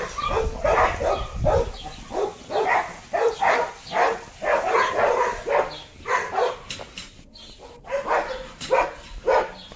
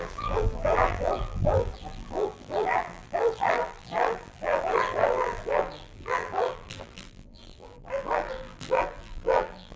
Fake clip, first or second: second